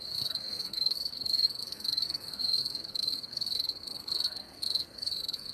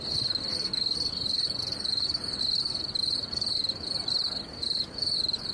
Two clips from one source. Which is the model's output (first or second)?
first